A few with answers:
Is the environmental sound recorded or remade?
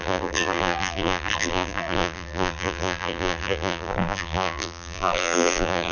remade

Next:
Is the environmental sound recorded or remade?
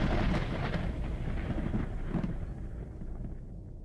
recorded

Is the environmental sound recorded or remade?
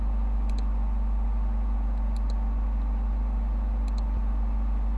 recorded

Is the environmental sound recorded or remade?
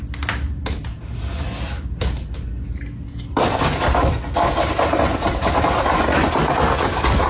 recorded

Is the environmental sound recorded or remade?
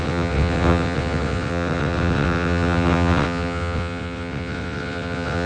remade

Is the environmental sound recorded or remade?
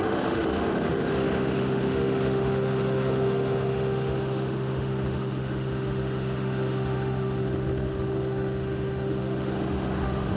remade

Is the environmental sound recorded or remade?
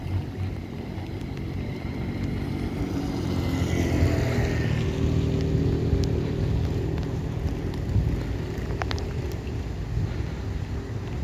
recorded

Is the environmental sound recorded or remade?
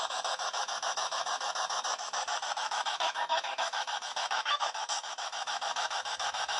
remade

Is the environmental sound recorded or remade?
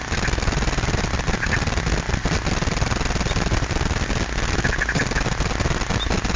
recorded